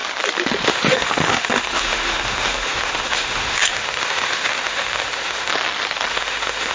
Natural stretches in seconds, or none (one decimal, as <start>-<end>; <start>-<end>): 0.0-0.7; 5.5-6.1

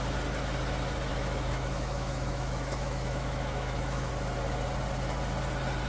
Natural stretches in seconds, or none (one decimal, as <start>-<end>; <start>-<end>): 0.0-1.1; 4.1-5.9

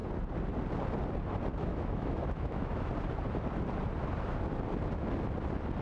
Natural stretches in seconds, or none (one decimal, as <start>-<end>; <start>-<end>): 0.0-1.7; 2.9-5.8

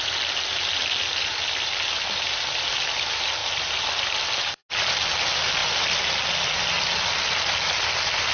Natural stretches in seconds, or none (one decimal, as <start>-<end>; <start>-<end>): 0.0-8.3